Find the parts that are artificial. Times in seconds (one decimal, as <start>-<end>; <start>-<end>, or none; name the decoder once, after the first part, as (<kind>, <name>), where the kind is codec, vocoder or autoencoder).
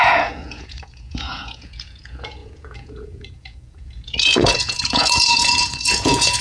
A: 0.0-6.4 (vocoder, Vocos)